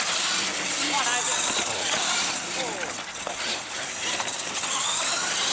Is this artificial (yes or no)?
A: no